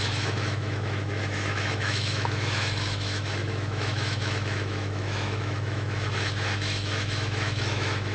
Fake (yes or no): yes